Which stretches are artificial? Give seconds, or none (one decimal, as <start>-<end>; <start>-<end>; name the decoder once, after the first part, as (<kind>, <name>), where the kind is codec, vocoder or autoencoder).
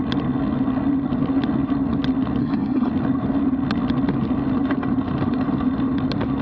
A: 2.4-2.9 (codec, SNAC)